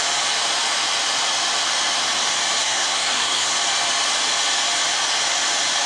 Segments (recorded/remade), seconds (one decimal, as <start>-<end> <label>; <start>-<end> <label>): 0.0-2.6 recorded; 2.6-3.5 remade; 3.5-5.9 recorded